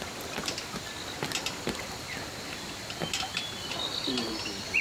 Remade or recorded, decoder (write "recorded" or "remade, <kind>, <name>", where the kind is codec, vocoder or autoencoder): recorded